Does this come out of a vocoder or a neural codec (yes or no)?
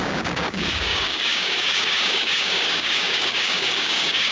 yes